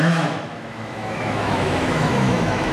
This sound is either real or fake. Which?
fake